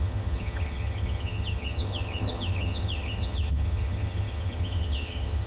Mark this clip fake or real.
fake